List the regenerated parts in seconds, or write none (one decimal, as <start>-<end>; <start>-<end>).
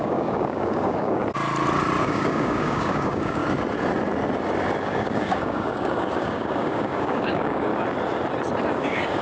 0.0-1.2; 2.0-3.4; 4.8-7.7; 8.7-9.2